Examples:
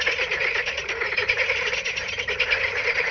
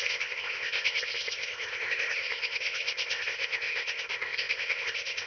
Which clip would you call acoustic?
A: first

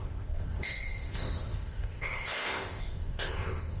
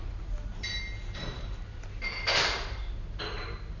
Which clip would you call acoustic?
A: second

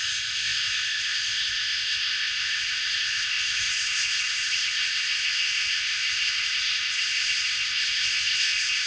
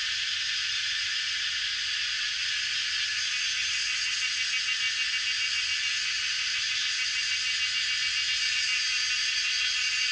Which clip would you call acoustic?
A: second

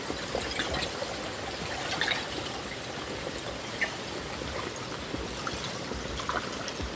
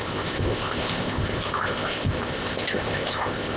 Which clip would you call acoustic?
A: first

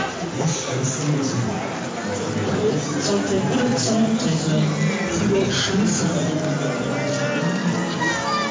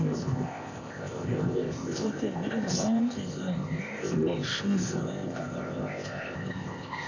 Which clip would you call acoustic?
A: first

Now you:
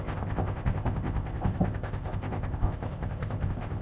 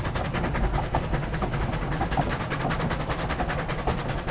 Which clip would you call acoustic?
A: second